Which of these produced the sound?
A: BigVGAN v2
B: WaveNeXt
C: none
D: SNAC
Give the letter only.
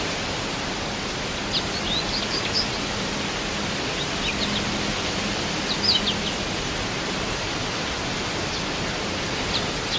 C